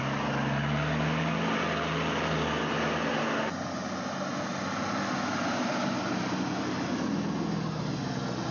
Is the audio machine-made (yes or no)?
no